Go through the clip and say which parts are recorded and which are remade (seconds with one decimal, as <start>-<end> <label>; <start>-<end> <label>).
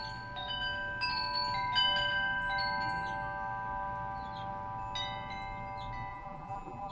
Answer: 0.0-6.1 recorded; 6.1-6.9 remade